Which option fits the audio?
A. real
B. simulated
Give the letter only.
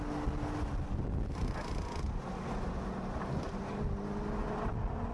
A